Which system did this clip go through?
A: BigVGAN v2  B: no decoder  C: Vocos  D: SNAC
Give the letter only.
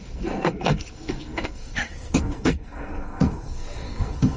D